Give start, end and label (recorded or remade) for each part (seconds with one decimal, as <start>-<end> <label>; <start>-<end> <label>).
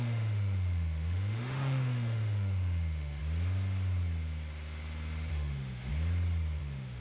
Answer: 0.0-3.2 remade; 3.2-5.3 recorded; 5.3-5.9 remade; 5.9-6.6 recorded; 6.6-7.0 remade